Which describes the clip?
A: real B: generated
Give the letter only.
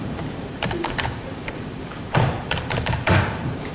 B